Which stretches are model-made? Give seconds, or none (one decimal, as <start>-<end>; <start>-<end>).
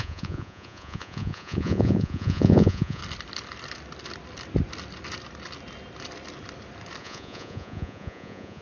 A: 0.0-3.0; 7.0-8.6